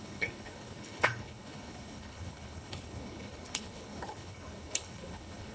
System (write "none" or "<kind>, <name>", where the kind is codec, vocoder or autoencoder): codec, HILCodec